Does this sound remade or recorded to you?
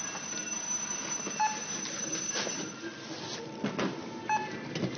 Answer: recorded